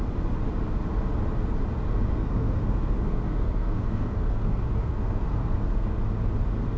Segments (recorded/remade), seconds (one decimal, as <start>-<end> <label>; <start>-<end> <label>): 0.0-1.9 recorded; 1.9-6.0 remade; 6.0-6.8 recorded